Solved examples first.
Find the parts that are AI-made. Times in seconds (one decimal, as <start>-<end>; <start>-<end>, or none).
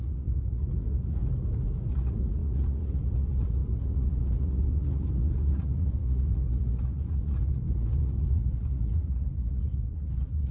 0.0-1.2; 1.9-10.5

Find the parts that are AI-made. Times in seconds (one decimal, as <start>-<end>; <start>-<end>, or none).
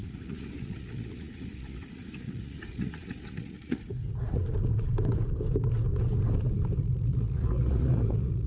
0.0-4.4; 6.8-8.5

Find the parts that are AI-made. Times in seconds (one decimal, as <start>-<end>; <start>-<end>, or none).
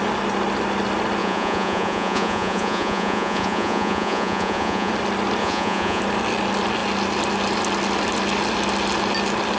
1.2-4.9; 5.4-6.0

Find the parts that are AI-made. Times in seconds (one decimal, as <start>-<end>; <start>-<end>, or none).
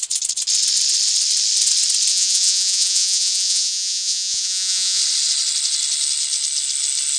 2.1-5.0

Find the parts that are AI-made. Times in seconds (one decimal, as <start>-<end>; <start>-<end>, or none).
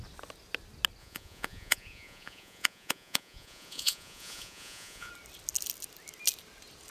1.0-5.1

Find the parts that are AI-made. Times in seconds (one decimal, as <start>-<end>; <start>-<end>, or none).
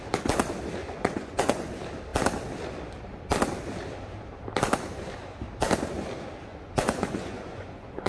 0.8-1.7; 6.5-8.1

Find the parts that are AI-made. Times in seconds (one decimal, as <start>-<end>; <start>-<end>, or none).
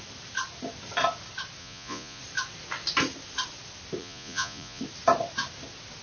1.6-2.2; 4.0-4.8